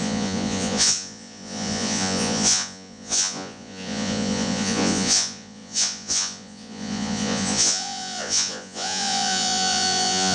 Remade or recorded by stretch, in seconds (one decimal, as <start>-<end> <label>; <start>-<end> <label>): 0.0-10.3 remade